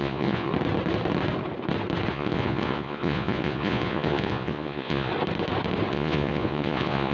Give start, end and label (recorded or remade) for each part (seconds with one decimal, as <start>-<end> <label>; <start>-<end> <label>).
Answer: 0.0-0.5 remade; 0.5-2.1 recorded; 2.1-5.1 remade; 5.1-5.9 recorded; 5.9-7.1 remade